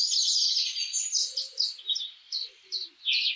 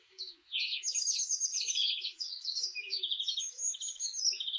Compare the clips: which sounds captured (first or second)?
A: first